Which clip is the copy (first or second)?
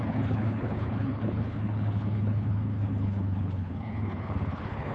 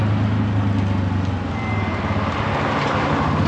first